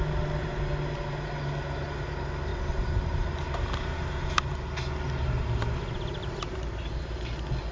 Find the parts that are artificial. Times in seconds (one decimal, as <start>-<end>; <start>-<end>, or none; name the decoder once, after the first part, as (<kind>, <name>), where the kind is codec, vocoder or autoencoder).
2.5-4.5 (vocoder, BigVGAN v2); 6.2-7.0